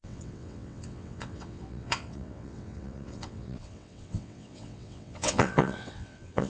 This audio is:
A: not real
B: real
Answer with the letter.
A